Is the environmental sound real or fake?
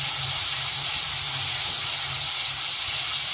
real